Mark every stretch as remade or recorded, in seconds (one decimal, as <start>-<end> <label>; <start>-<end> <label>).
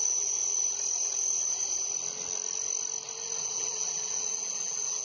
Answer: 0.0-0.4 remade; 0.4-3.4 recorded; 3.4-5.0 remade